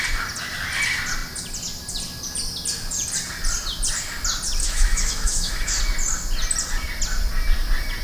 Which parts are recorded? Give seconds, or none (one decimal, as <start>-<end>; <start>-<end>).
0.0-4.6; 5.8-8.0